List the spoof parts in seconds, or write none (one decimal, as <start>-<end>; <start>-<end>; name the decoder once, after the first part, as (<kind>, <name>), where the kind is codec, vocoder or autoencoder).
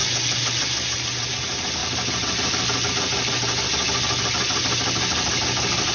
none